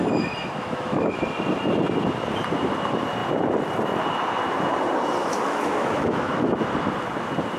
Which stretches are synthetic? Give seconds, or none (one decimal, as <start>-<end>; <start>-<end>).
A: 0.4-1.2; 5.2-6.6